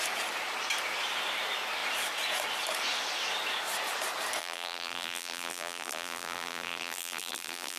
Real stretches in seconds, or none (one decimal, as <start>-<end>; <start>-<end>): 0.0-4.4